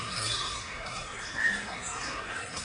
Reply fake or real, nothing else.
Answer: fake